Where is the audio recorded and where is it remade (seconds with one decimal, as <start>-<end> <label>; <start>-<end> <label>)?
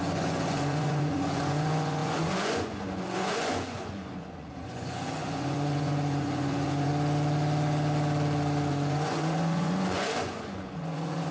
0.0-6.9 remade; 6.9-8.7 recorded; 8.7-11.3 remade